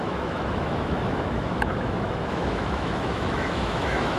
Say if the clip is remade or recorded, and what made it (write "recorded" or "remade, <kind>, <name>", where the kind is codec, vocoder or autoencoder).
remade, autoencoder, DAC-VAE